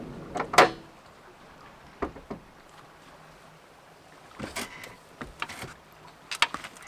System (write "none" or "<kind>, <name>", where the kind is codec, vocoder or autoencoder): none